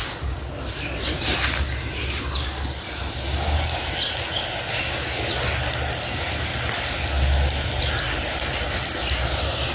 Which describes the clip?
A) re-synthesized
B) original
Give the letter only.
B